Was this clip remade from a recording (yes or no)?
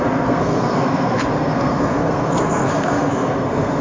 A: yes